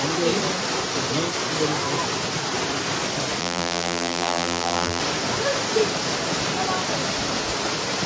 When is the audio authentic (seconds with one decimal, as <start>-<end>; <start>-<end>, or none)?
0.0-3.4; 5.0-8.1